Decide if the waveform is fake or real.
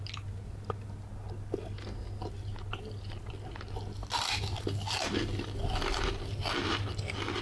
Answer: real